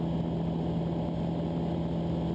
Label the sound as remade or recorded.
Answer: recorded